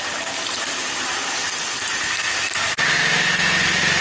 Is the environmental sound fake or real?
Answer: real